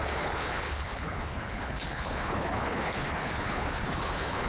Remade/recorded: remade